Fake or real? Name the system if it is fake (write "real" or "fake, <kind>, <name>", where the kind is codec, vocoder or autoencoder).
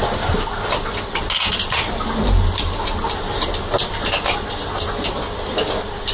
real